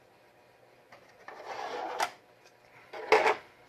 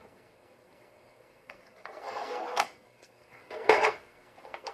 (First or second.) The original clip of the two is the first